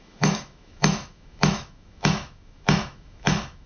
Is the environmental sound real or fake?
fake